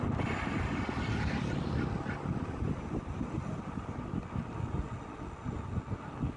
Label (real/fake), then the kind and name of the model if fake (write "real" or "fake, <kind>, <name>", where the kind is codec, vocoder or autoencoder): real